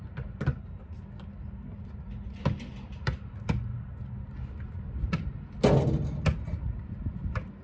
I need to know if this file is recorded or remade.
recorded